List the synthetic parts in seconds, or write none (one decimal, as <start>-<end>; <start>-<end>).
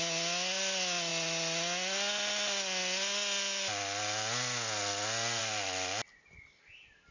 none